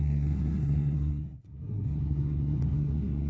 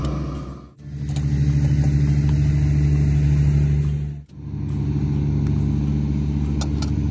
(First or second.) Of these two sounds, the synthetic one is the first